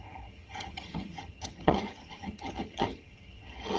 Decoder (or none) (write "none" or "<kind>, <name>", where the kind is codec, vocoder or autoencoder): vocoder, HiFi-GAN